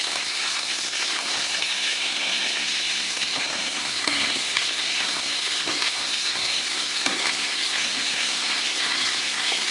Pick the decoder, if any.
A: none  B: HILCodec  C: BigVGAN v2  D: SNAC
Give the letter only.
D